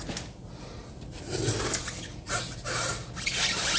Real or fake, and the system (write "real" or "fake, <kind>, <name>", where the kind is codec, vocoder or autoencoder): real